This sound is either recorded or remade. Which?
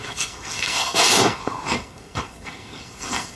remade